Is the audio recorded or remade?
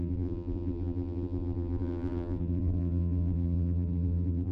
remade